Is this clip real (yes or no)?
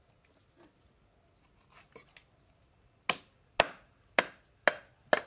yes